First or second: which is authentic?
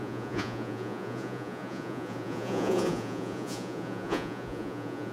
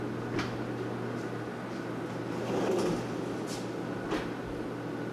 second